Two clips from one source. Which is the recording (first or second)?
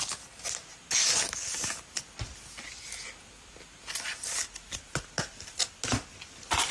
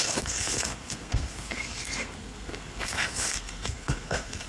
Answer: first